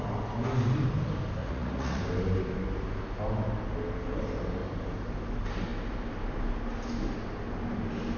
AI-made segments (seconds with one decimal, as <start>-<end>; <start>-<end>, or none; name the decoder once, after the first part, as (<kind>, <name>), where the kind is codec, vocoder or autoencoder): 1.4-2.0 (vocoder, Vocos)